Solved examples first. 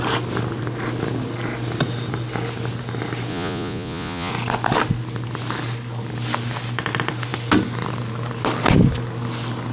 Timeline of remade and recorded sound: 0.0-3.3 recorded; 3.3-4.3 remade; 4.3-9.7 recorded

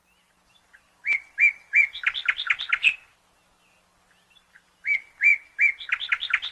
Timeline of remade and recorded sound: 0.0-6.5 recorded

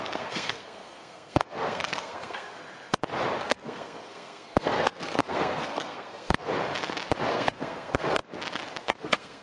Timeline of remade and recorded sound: 0.0-2.6 remade; 2.6-3.4 recorded; 3.4-6.5 remade; 6.5-7.3 recorded; 7.3-8.2 remade; 8.2-8.8 recorded; 8.8-9.4 remade

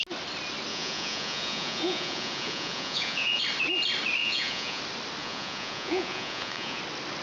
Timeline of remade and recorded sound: 0.0-0.7 recorded; 0.7-3.4 remade; 3.4-4.2 recorded; 4.2-4.8 remade; 4.8-5.2 recorded; 5.2-6.8 remade; 6.8-7.2 recorded

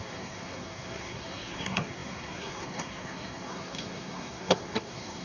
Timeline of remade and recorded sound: 0.0-5.2 remade

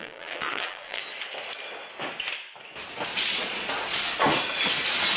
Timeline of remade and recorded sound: 0.0-1.0 remade; 1.0-3.1 recorded; 3.1-4.1 remade; 4.1-5.2 recorded